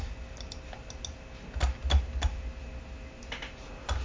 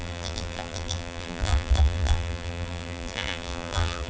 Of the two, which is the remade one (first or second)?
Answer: second